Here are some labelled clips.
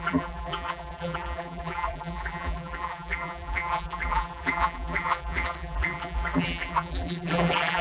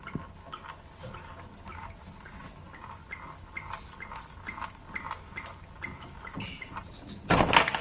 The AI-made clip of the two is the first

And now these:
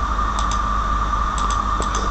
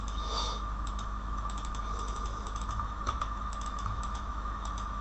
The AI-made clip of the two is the second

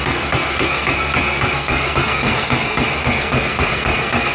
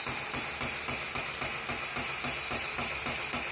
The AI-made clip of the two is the first